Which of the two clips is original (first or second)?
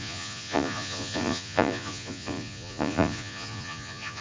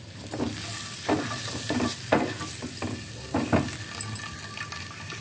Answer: second